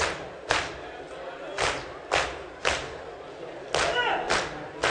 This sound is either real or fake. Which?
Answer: real